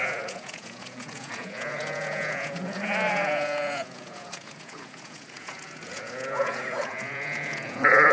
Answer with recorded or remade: remade